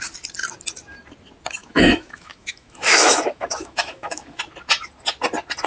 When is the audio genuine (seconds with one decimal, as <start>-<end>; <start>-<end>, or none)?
0.0-1.6; 4.4-5.7